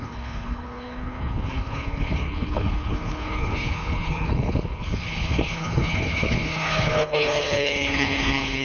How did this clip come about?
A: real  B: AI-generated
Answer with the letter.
B